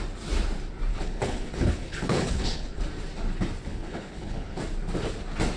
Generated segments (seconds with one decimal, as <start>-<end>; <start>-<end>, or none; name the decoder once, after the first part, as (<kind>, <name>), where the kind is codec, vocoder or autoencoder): 0.9-2.8 (codec, HILCodec); 3.7-4.6